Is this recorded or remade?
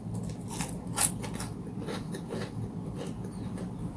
recorded